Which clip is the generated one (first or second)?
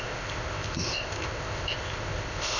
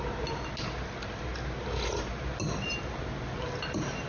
first